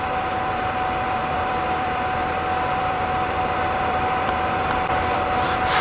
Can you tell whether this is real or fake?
fake